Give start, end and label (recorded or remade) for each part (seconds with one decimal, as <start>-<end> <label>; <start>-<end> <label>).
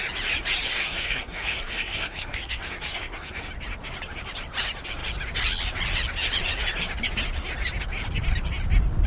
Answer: 0.0-0.7 recorded; 0.7-3.5 remade; 3.5-9.1 recorded